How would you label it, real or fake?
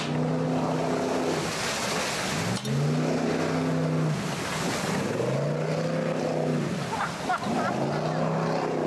real